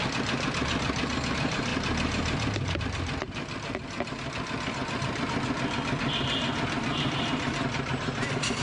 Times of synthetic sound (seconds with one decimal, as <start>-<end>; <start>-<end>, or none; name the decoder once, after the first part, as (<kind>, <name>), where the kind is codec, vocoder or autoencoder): none